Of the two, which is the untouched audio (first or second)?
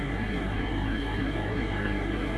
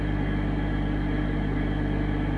second